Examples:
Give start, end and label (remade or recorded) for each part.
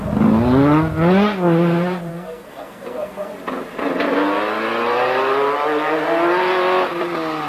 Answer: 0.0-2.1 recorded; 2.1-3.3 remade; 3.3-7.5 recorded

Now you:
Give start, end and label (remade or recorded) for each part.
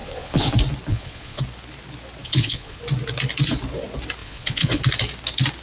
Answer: 0.0-0.5 remade; 0.5-0.9 recorded; 0.9-1.4 remade; 1.4-2.2 recorded; 2.2-2.8 remade; 2.8-4.2 recorded; 4.2-4.8 remade; 4.8-5.6 recorded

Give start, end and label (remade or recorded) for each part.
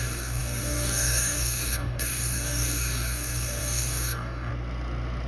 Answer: 0.0-4.5 remade; 4.5-5.3 recorded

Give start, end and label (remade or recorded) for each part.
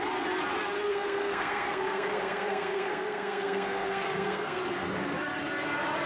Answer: 0.0-0.9 recorded; 0.9-4.6 remade; 4.6-6.1 recorded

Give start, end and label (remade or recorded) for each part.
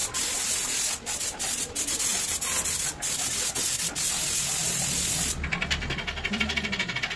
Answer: 0.0-7.2 recorded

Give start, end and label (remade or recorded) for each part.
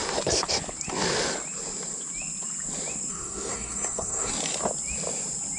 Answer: 0.0-3.1 recorded; 3.1-4.3 remade; 4.3-5.6 recorded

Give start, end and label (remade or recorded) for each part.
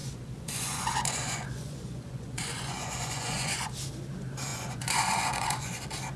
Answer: 0.0-3.7 remade; 3.7-4.5 recorded; 4.5-5.8 remade; 5.8-6.2 recorded